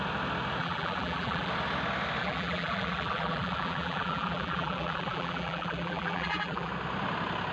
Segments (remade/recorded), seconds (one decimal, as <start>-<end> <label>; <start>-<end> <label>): 0.0-0.6 recorded; 0.6-1.5 remade; 1.5-2.2 recorded; 2.2-6.7 remade; 6.7-7.5 recorded